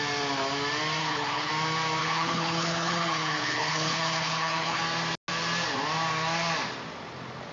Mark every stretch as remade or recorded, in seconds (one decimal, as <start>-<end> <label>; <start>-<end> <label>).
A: 0.0-1.0 recorded; 1.0-1.5 remade; 1.5-2.0 recorded; 2.0-4.8 remade; 4.8-7.5 recorded